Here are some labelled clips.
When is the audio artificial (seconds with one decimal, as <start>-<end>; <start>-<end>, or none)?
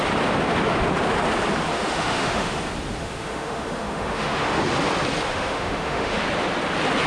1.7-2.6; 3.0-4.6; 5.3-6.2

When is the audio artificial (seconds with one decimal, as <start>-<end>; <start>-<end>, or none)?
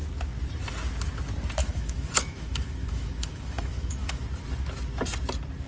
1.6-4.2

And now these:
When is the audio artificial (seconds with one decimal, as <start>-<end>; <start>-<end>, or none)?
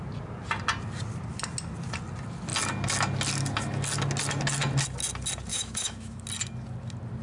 5.5-6.2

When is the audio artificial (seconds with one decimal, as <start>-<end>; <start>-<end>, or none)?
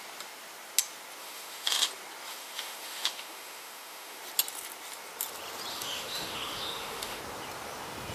1.2-1.9; 2.3-4.2; 5.7-7.2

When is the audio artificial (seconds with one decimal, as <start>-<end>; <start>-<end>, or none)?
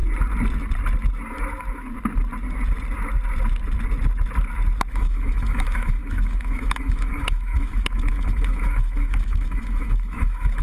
4.9-10.6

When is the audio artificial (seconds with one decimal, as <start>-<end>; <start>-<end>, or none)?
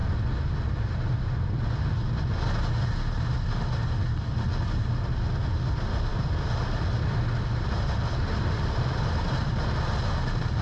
none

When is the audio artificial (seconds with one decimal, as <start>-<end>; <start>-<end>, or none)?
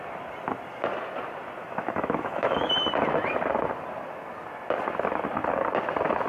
1.6-2.7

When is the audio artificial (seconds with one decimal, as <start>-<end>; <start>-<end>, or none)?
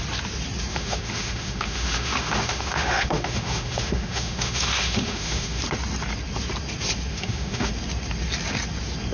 0.7-5.6; 7.1-7.7